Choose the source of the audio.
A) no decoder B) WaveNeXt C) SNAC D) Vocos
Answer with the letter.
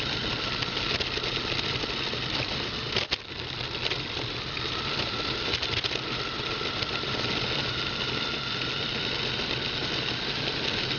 A